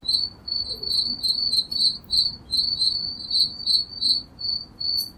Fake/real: real